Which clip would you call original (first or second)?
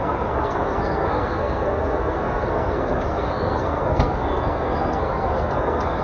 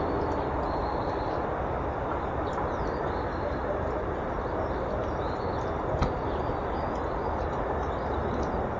second